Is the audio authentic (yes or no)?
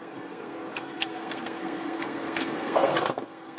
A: no